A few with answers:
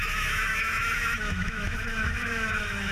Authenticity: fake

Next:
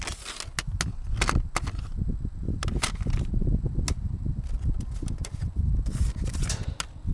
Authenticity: real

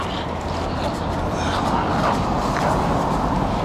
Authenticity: real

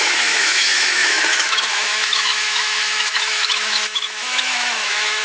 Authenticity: fake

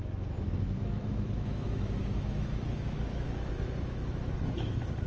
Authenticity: fake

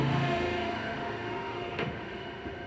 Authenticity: fake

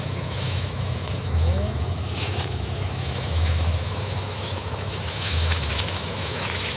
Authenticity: fake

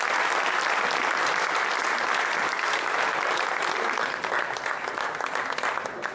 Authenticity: real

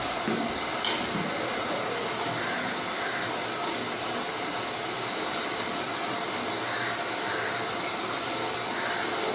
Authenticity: real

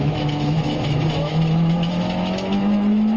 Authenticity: fake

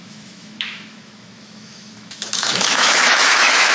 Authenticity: fake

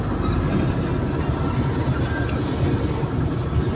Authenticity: real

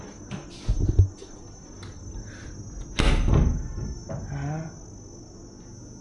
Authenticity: real